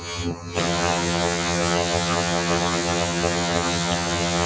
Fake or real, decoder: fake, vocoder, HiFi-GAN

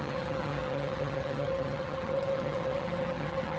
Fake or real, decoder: fake, vocoder, HiFi-GAN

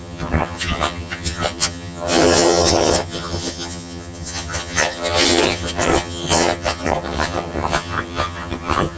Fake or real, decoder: fake, vocoder, HiFi-GAN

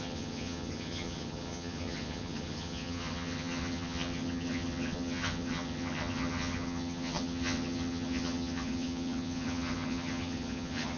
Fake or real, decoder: fake, vocoder, HiFi-GAN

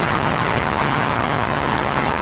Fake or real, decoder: fake, vocoder, HiFi-GAN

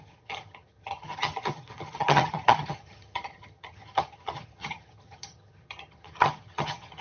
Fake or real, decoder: fake, vocoder, HiFi-GAN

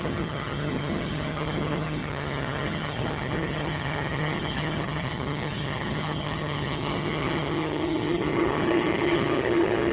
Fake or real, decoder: fake, vocoder, HiFi-GAN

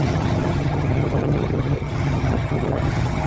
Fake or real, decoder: fake, vocoder, HiFi-GAN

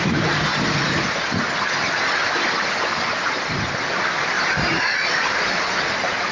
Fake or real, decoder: real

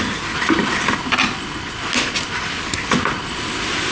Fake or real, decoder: real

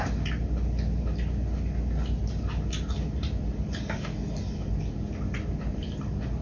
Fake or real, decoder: real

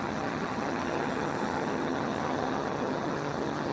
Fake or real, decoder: fake, vocoder, HiFi-GAN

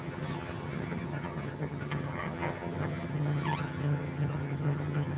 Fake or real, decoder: fake, vocoder, HiFi-GAN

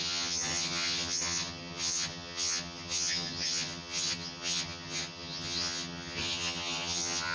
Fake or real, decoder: fake, vocoder, HiFi-GAN